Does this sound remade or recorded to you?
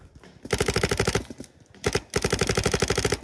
recorded